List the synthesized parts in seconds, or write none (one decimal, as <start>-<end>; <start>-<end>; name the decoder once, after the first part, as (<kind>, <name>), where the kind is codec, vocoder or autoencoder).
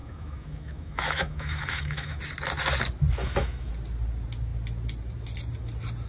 0.0-2.2 (autoencoder, DAC-VAE); 3.2-3.7